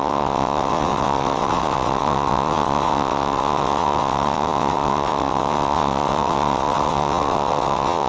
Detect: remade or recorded remade